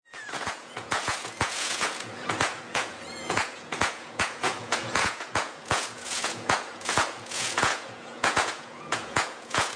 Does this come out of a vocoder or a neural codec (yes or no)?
yes